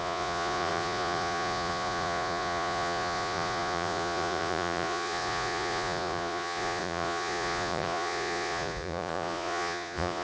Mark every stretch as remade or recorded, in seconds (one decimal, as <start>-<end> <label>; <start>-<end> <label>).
0.0-10.2 remade